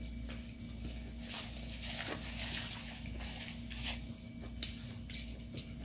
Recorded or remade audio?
recorded